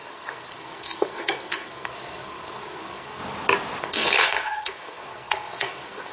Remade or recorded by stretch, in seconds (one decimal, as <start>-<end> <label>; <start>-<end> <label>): 0.0-3.2 remade; 3.2-3.8 recorded; 3.8-6.1 remade